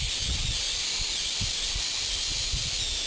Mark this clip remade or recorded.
recorded